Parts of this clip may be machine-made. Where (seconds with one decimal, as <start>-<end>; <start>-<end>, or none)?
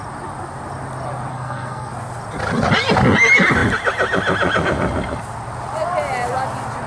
1.3-1.9